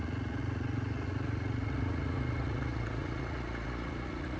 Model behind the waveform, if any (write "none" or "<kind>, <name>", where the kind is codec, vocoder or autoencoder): vocoder, Vocos